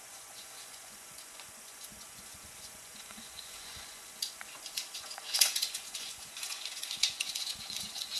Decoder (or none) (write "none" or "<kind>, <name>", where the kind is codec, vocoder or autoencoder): vocoder, Vocos